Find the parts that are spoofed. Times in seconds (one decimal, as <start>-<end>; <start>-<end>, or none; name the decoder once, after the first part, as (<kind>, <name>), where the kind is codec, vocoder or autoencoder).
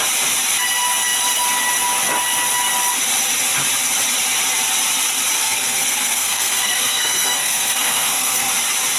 5.4-8.5 (codec, SNAC)